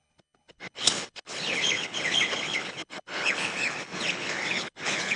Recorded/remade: remade